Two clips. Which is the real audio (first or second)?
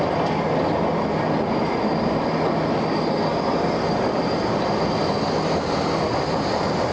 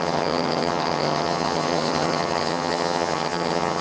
first